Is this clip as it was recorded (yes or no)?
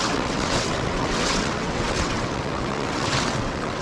no